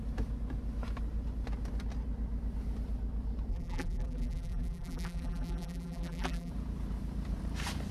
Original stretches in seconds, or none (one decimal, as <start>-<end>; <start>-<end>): 0.0-3.5; 6.5-7.9